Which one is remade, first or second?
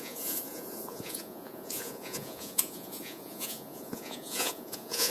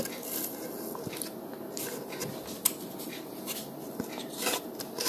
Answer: first